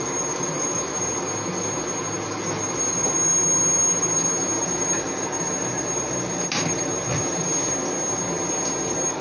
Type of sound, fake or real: real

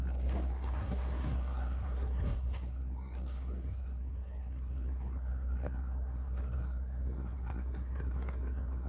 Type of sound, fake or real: fake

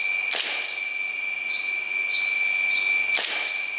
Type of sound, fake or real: real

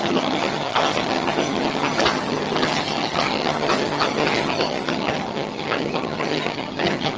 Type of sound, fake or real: fake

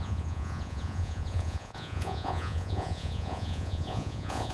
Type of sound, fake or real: fake